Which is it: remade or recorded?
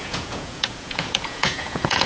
remade